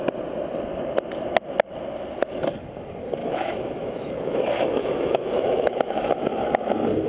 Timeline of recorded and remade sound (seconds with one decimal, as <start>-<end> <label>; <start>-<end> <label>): 0.0-3.2 recorded; 3.2-6.4 remade; 6.4-7.1 recorded